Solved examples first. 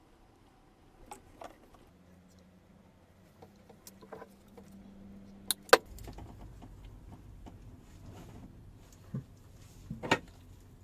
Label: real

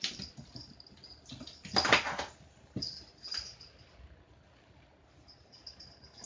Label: real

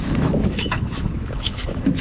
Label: fake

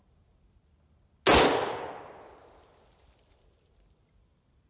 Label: real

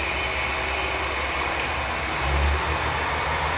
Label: real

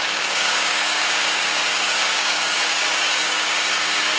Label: fake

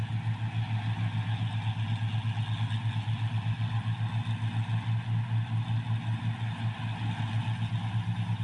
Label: real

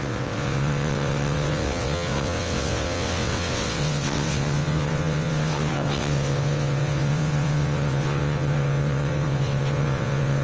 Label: fake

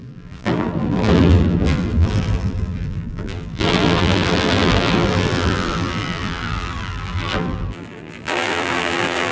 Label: fake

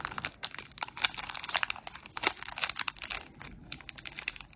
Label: real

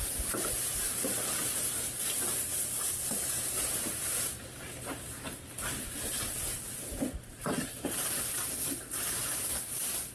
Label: fake